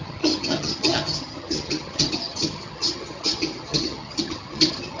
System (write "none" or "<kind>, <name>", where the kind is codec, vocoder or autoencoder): vocoder, HiFi-GAN